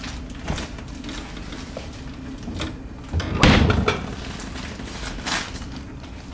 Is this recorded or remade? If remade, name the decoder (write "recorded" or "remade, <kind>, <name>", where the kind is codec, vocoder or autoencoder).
recorded